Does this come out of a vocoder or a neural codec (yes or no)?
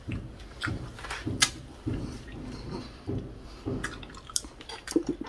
no